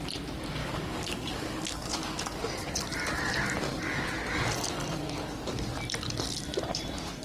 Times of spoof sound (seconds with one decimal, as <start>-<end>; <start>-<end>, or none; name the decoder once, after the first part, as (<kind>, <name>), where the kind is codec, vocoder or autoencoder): 0.6-2.4 (codec, DAC)